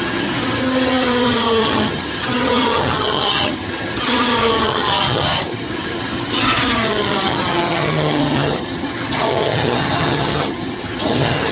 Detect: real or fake fake